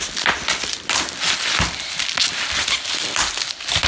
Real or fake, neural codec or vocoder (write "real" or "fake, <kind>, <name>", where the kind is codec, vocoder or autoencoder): real